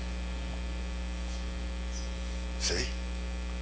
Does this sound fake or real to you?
real